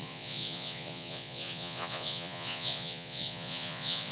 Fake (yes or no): yes